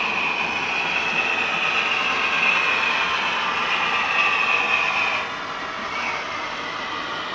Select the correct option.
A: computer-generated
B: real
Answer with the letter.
B